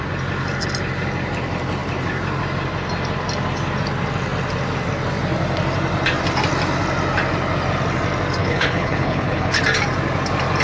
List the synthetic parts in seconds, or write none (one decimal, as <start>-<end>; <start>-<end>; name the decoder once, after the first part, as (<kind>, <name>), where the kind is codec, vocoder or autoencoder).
8.4-9.6 (codec, HILCodec)